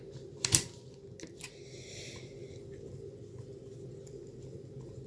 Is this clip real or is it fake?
real